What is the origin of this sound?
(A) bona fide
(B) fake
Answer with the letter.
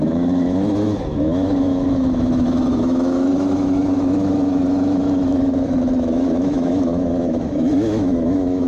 B